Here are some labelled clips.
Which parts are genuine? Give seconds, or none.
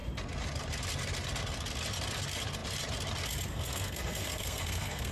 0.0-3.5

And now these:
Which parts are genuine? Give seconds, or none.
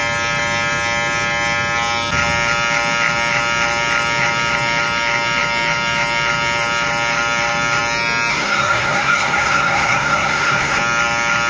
0.0-8.3; 10.8-11.5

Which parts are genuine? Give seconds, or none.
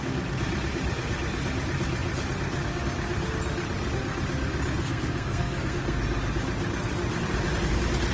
0.0-4.8; 6.0-8.1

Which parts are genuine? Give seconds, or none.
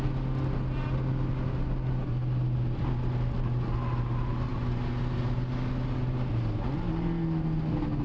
0.0-8.0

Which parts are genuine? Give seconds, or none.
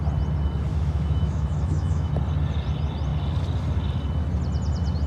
0.0-0.7; 2.1-5.1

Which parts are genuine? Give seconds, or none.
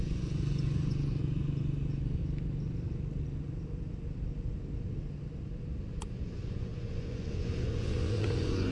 2.2-5.9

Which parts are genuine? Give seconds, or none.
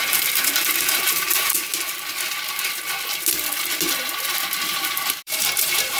1.7-4.8